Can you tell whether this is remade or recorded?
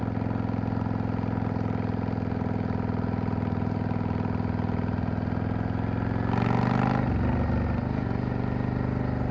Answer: recorded